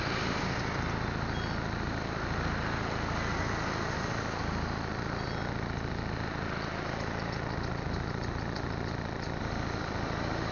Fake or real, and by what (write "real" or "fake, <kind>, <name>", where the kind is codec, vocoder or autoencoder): real